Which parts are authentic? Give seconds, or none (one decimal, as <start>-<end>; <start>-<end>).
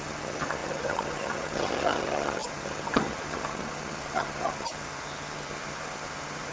none